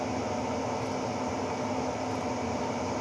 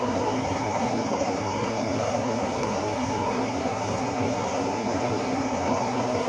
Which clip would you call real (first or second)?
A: first